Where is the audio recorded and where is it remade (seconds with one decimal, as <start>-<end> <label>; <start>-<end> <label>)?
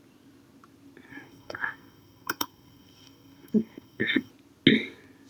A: 0.0-1.1 recorded; 1.1-4.3 remade; 4.3-5.3 recorded